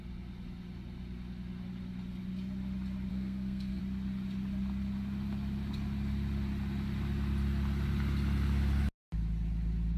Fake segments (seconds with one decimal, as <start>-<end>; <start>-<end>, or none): 3.1-3.8